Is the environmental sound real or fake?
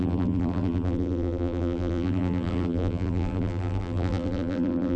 fake